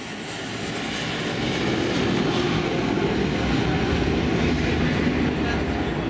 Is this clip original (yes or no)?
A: yes